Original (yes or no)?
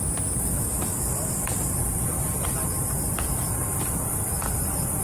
yes